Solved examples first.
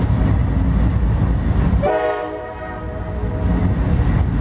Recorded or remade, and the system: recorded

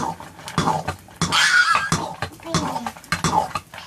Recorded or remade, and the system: recorded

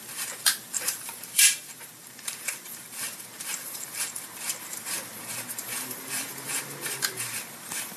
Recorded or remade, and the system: remade, vocoder, BigVGAN v2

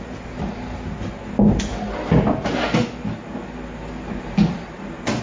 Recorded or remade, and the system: recorded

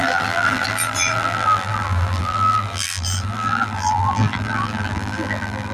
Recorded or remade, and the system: remade, vocoder, BigVGAN v2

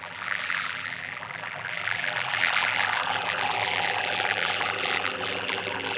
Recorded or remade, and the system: remade, vocoder, BigVGAN v2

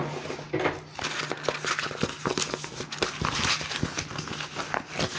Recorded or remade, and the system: recorded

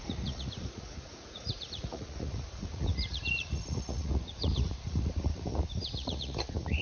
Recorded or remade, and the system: remade, vocoder, Vocos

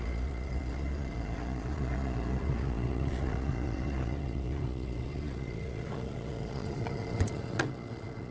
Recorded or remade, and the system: remade, vocoder, Vocos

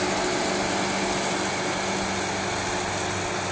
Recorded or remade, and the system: recorded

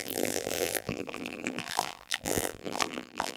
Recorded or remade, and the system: remade, vocoder, BigVGAN v2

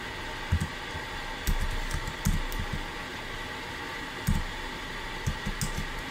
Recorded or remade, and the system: recorded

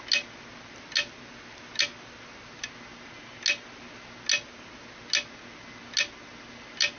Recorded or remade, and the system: recorded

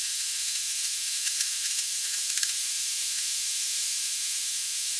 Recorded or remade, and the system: remade, autoencoder, DAC-VAE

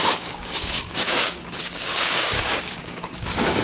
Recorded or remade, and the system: remade, codec, DAC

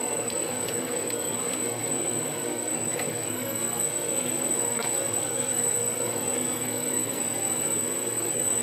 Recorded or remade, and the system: remade, codec, SNAC